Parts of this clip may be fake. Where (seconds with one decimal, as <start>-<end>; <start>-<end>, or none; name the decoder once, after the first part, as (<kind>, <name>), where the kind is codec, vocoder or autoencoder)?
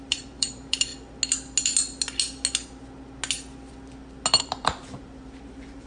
0.0-0.9 (vocoder, BigVGAN v2); 4.4-5.9